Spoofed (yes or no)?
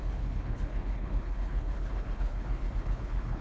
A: yes